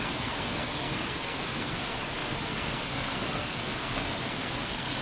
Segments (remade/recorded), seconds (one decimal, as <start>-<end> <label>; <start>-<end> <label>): 0.0-5.0 remade